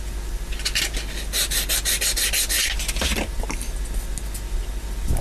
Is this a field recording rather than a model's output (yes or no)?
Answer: yes